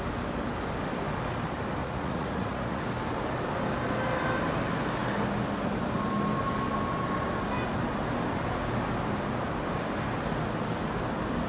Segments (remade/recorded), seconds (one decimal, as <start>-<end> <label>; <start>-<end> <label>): 0.0-1.8 recorded; 1.8-2.8 remade; 2.8-11.5 recorded